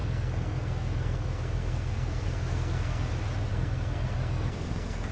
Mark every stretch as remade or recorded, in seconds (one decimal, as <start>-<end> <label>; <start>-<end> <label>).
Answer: 0.0-3.1 remade; 3.1-3.5 recorded; 3.5-5.1 remade